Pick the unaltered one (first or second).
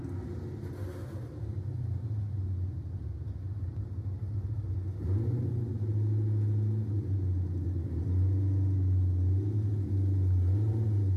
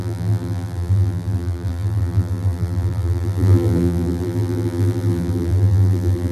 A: first